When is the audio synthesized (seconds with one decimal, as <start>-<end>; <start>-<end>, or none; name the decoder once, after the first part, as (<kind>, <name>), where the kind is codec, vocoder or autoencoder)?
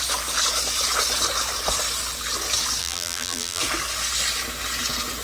2.8-3.6 (vocoder, BigVGAN v2)